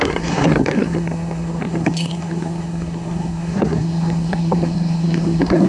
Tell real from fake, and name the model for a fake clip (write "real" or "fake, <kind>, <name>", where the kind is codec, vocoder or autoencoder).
fake, codec, SNAC